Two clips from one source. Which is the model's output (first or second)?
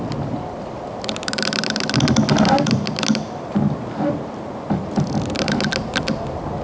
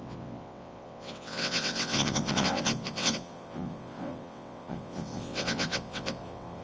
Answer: second